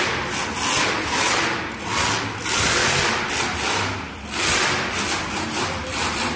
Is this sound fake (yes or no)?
no